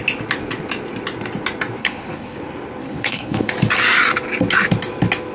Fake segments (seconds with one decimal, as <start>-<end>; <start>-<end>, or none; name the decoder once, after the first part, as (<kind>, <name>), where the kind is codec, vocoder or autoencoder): 1.8-2.4 (codec, HILCodec); 2.8-3.5